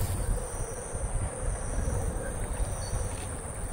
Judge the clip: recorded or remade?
recorded